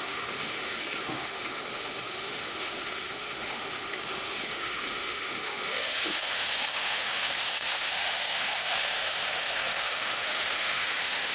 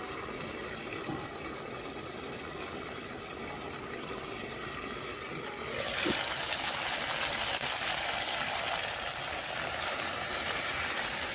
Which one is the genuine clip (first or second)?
second